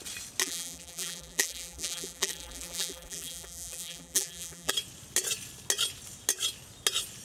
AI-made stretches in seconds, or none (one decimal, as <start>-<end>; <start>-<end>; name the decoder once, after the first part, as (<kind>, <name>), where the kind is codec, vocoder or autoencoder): 0.4-4.7 (vocoder, BigVGAN v2)